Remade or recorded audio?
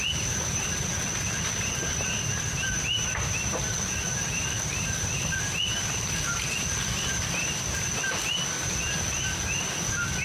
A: recorded